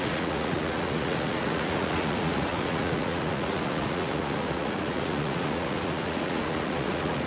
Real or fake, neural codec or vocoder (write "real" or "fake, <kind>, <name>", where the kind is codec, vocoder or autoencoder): fake, vocoder, Vocos